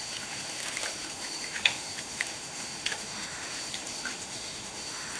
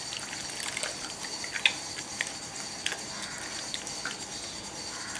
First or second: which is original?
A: second